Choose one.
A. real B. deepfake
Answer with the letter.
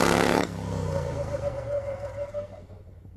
B